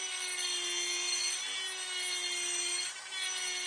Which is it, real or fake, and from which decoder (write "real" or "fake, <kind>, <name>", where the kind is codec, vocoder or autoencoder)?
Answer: real